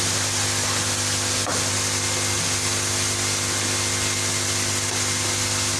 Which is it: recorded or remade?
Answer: recorded